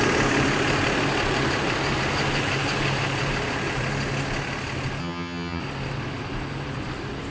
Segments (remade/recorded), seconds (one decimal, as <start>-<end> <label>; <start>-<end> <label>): 0.0-5.0 recorded; 5.0-5.6 remade; 5.6-7.3 recorded